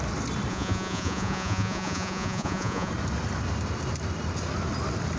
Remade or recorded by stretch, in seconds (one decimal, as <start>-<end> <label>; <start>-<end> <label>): 0.0-0.5 recorded; 0.5-2.9 remade; 2.9-5.2 recorded